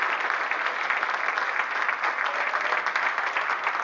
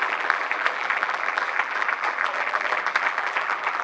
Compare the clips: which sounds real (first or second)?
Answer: first